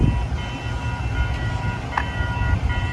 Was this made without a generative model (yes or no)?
yes